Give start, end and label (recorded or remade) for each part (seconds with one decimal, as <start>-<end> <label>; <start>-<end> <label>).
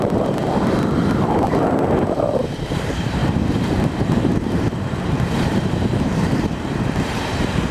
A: 0.0-0.4 remade; 0.4-2.5 recorded; 2.5-7.7 remade